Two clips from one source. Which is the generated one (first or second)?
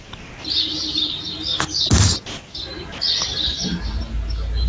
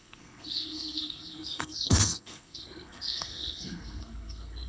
second